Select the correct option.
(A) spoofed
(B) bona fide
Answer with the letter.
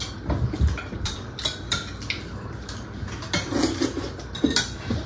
B